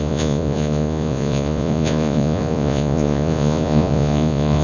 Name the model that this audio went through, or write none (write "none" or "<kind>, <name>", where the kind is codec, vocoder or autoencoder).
vocoder, Vocos